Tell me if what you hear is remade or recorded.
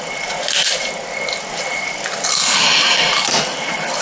remade